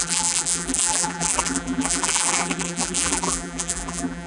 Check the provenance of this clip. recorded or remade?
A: remade